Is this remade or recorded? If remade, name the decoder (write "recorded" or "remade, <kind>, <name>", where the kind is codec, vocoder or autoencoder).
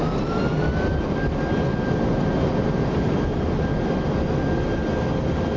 recorded